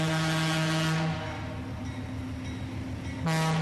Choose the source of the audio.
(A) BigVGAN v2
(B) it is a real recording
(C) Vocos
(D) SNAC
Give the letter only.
B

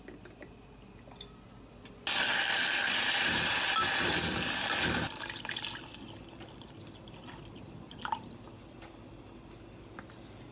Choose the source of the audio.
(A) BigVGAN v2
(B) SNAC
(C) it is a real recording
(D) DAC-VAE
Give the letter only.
C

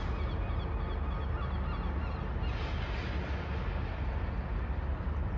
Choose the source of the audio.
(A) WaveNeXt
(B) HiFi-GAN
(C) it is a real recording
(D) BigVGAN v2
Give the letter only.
C